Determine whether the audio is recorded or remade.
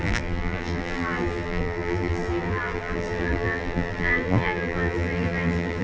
remade